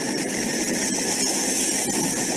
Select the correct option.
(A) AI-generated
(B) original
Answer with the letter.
B